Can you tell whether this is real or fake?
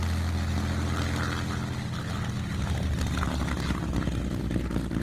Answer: real